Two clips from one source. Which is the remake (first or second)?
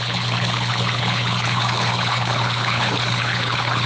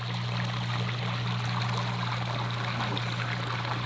first